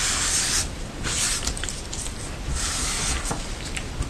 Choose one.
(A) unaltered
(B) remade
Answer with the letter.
A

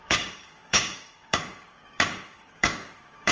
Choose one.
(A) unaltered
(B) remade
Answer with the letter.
B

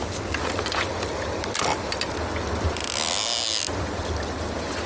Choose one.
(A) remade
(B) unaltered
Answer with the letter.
B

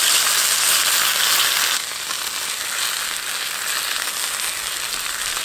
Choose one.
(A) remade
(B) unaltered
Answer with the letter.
B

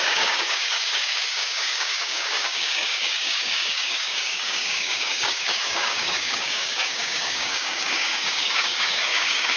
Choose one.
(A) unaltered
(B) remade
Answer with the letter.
B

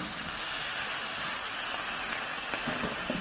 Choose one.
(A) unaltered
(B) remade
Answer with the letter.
A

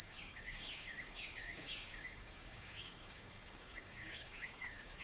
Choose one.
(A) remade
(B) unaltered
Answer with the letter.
A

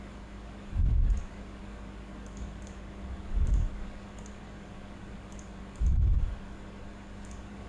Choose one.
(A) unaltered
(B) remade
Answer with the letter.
B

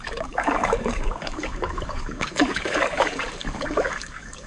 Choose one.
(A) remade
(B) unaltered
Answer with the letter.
A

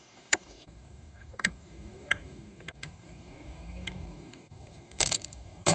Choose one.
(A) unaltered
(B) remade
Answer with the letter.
B